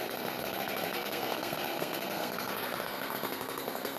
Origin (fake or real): fake